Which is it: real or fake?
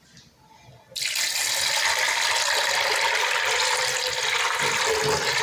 real